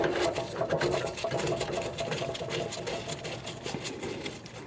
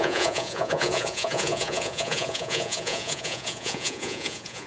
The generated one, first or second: second